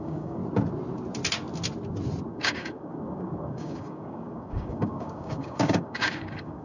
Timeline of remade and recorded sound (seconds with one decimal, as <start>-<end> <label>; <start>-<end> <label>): 0.0-0.4 remade; 0.4-2.3 recorded; 2.3-6.6 remade